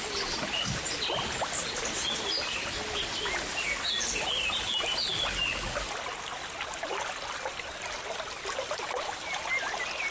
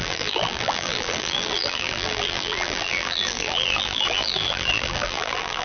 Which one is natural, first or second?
first